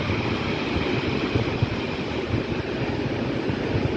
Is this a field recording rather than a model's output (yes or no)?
yes